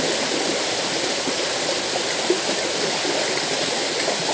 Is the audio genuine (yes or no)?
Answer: yes